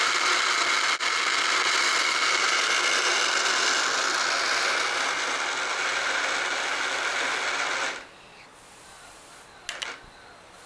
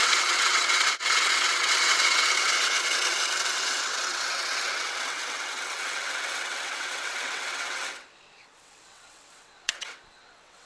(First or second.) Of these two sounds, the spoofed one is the second